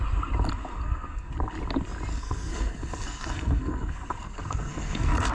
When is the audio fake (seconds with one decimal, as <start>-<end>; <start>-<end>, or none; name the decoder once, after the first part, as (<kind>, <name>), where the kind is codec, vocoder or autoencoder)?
0.7-1.3 (codec, SNAC); 2.1-5.3